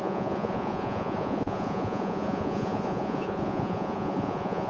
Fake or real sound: fake